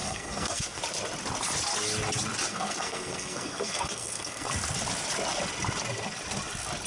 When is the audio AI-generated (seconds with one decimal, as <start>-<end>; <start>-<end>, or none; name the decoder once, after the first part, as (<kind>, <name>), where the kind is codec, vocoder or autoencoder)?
0.0-0.8 (codec, SNAC); 2.5-4.5